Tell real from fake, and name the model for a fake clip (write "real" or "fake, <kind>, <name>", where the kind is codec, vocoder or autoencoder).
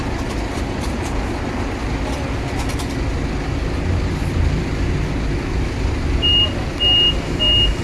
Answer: real